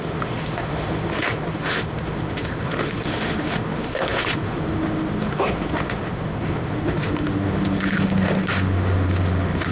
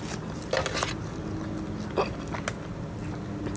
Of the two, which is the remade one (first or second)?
first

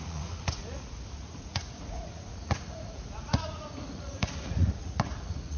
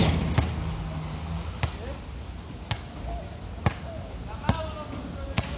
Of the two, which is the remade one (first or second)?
first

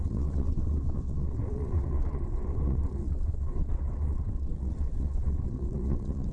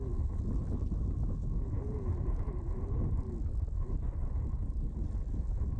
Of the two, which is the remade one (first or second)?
first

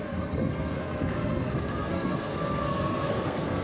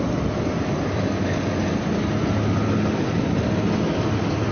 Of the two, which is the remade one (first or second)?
first